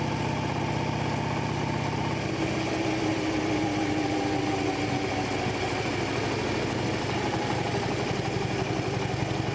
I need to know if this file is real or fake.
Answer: real